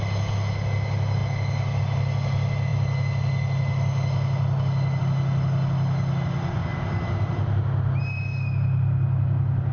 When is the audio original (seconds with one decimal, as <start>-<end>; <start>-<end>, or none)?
0.0-9.7